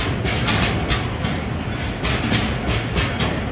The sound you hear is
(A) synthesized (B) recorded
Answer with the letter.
B